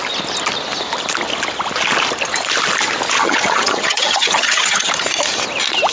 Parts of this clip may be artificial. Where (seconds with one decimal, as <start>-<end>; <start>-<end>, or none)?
3.2-4.9